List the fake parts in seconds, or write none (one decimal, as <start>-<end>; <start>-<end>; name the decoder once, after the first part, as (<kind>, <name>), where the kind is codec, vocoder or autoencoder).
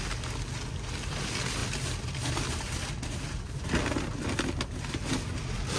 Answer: none